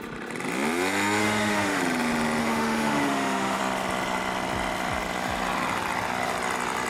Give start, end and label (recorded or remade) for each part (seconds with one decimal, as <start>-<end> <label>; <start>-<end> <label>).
0.0-1.2 recorded; 1.2-1.8 remade; 1.8-2.4 recorded; 2.4-3.6 remade; 3.6-6.9 recorded

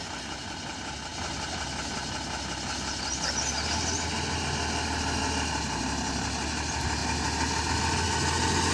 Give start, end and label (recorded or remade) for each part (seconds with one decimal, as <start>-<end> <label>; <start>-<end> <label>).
0.0-8.7 recorded

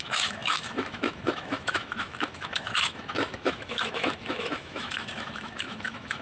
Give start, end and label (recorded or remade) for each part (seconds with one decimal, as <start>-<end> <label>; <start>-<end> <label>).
0.0-6.2 remade

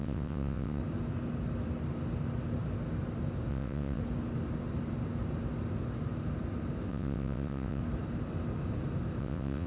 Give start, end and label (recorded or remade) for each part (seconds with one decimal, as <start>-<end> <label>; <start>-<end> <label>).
0.0-0.8 remade; 0.8-3.5 recorded; 3.5-4.0 remade; 4.0-6.9 recorded; 6.9-7.8 remade; 7.8-9.2 recorded; 9.2-9.7 remade

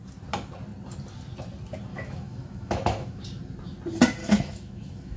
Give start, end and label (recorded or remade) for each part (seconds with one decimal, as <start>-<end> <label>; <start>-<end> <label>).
0.0-1.9 recorded; 1.9-3.2 remade; 3.2-4.2 recorded; 4.2-5.2 remade

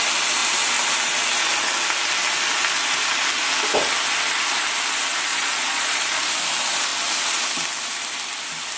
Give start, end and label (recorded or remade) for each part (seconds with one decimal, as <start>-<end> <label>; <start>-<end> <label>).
0.0-5.3 recorded; 5.3-6.2 remade; 6.2-8.8 recorded

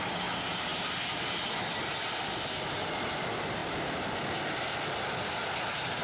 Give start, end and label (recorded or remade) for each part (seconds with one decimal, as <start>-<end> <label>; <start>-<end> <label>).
0.0-6.0 recorded

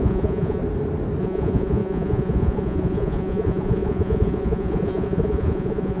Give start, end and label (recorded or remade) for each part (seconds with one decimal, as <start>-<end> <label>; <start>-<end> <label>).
0.0-0.6 remade; 0.6-1.2 recorded; 1.2-6.0 remade